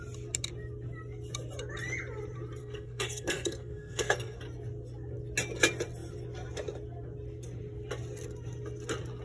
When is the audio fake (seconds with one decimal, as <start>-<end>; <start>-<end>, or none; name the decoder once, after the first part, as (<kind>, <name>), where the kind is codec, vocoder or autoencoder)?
2.6-4.4 (codec, SNAC)